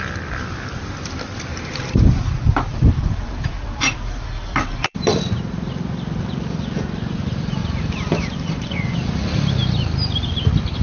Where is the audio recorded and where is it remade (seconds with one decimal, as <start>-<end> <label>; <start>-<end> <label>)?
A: 0.0-1.5 recorded; 1.5-5.2 remade; 5.2-7.6 recorded; 7.6-8.7 remade; 8.7-10.8 recorded